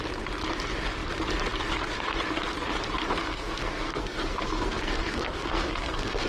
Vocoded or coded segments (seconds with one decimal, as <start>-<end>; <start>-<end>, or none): 3.2-6.3